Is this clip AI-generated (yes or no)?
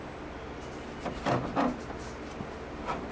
no